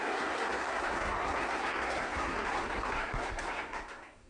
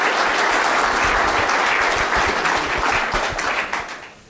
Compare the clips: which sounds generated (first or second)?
first